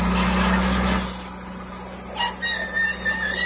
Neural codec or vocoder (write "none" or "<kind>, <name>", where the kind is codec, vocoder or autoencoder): none